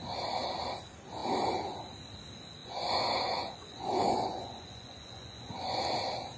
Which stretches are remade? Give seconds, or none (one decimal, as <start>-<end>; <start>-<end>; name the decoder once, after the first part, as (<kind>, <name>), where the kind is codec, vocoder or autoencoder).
2.6-5.8 (vocoder, Vocos)